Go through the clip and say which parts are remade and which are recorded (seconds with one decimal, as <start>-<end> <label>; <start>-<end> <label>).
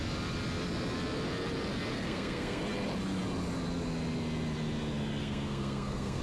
0.0-1.9 recorded; 1.9-2.6 remade; 2.6-5.2 recorded; 5.2-6.2 remade